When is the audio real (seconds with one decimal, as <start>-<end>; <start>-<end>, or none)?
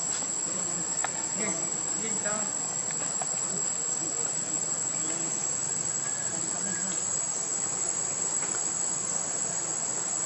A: 0.0-1.0; 2.3-10.3